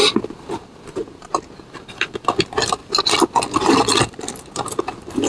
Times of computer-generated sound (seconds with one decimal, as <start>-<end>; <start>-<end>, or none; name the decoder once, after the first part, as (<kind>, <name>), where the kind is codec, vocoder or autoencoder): none